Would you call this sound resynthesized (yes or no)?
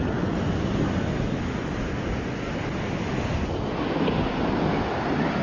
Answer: no